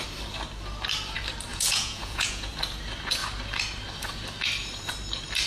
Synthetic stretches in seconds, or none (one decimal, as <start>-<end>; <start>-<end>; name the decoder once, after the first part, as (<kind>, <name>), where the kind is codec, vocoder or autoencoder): 1.5-2.5 (vocoder, Vocos)